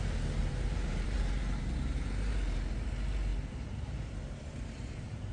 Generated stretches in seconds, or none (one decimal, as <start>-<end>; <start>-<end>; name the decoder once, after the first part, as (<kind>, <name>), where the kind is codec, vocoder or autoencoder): 0.4-1.6 (vocoder, BigVGAN v2); 3.3-5.3